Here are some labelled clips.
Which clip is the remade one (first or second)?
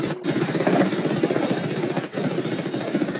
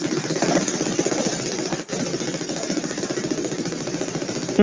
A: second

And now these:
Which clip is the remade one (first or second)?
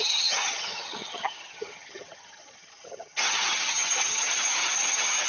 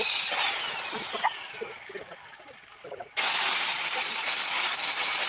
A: first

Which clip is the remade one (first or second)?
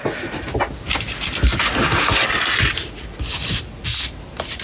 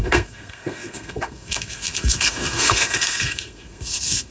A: second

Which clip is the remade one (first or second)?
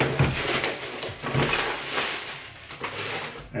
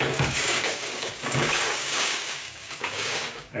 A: second